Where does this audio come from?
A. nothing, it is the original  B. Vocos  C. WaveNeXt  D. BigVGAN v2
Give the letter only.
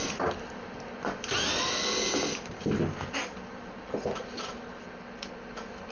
A